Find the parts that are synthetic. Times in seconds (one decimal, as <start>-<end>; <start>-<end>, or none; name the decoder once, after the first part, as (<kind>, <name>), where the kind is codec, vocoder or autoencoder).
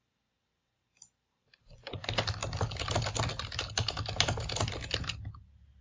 none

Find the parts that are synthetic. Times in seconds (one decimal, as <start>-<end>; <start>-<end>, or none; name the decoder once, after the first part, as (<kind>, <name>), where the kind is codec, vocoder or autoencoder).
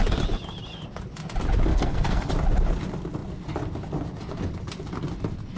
1.7-2.3 (codec, SNAC)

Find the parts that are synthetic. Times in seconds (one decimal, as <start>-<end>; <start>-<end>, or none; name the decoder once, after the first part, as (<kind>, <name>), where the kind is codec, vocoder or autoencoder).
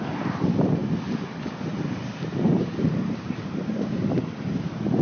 2.3-3.4 (vocoder, BigVGAN v2)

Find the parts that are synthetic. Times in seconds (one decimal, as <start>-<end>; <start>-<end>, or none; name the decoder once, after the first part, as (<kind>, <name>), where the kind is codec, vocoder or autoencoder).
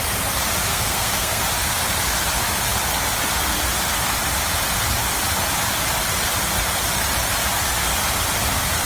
0.7-1.4 (codec, SNAC)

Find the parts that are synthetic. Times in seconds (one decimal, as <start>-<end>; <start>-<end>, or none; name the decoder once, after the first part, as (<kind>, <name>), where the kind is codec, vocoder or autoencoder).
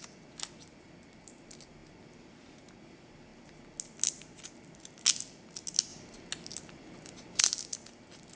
none